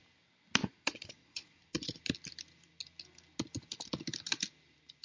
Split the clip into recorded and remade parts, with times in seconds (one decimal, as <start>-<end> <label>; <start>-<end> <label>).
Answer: 0.0-0.6 recorded; 0.6-2.0 remade; 2.0-5.0 recorded